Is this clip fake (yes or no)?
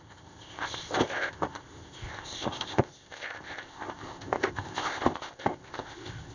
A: yes